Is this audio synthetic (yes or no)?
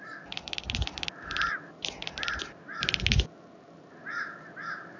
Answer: no